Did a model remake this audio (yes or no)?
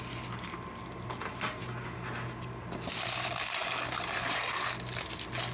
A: no